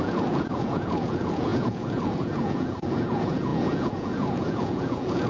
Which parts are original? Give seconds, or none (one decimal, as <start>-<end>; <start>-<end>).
none